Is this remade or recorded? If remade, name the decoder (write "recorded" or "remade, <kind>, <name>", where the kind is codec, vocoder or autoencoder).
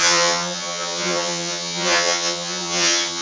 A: remade, vocoder, HiFi-GAN